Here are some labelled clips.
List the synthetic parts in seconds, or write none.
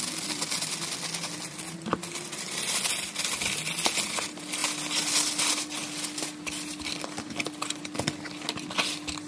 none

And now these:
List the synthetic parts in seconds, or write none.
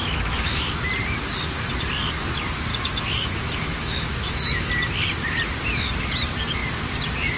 0.0-0.7 (autoencoder, DAC-VAE); 2.7-4.7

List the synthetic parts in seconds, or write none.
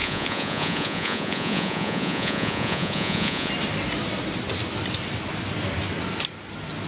0.0-3.5 (vocoder, Vocos)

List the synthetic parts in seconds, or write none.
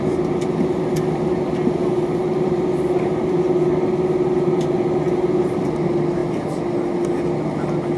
none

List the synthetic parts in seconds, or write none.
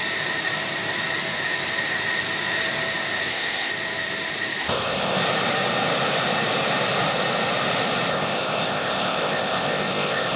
3.3-3.7 (codec, ZipCodec); 4.6-5.2; 8.1-10.4